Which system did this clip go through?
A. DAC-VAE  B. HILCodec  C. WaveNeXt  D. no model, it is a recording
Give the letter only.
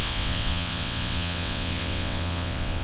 C